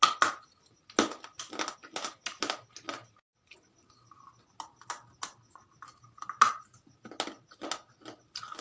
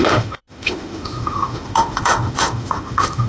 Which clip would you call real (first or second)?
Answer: first